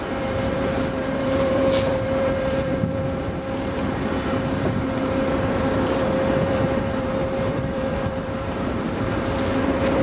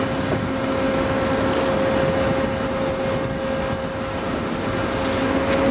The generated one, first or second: first